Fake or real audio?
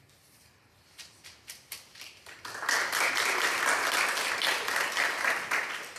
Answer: real